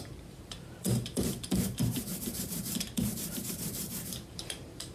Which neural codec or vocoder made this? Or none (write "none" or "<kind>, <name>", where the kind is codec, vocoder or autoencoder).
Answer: vocoder, BigVGAN v2